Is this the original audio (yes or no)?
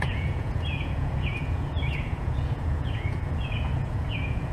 no